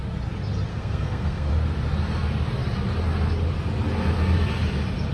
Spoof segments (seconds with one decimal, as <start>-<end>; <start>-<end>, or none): 0.7-1.5